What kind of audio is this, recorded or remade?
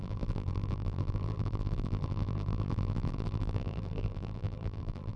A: remade